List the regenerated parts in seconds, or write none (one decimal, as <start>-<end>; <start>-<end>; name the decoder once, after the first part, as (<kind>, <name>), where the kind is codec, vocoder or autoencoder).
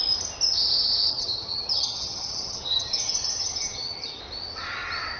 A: 1.1-4.2 (vocoder, HiFi-GAN)